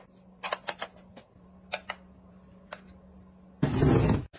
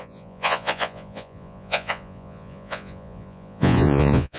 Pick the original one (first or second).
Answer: first